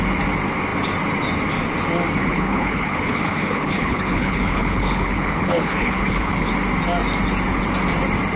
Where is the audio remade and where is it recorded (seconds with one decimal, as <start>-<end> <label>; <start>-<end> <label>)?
0.0-2.2 recorded; 2.2-6.5 remade; 6.5-8.4 recorded

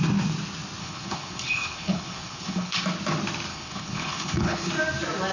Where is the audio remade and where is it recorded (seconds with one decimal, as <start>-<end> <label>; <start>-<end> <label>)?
0.0-0.8 recorded; 0.8-2.8 remade; 2.8-3.5 recorded; 3.5-4.7 remade; 4.7-5.3 recorded

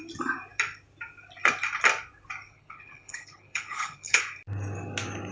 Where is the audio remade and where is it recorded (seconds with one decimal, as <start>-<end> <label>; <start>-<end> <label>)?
0.0-2.5 recorded; 2.5-4.2 remade; 4.2-5.3 recorded

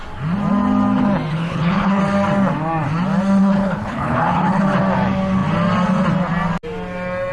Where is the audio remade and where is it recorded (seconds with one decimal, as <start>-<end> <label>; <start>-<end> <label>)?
0.0-1.3 recorded; 1.3-2.0 remade; 2.0-3.4 recorded; 3.4-4.6 remade; 4.6-7.3 recorded

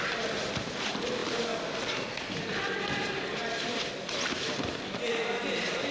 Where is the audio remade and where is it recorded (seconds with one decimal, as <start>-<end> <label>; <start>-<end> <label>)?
0.0-5.9 recorded

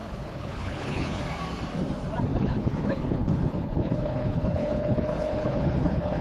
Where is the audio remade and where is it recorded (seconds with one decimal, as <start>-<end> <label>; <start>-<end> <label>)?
0.0-1.2 remade; 1.2-2.3 recorded; 2.3-6.2 remade

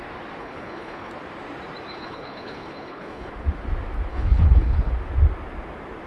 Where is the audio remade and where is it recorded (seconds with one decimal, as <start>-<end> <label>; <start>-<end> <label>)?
0.0-0.4 recorded; 0.4-1.1 remade; 1.1-1.9 recorded; 1.9-3.3 remade; 3.3-4.1 recorded; 4.1-4.9 remade; 4.9-6.1 recorded